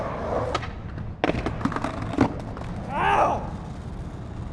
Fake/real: real